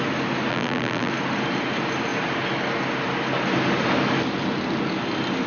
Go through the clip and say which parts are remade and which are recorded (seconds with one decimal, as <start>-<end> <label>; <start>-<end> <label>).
0.0-0.5 recorded; 0.5-1.1 remade; 1.1-5.5 recorded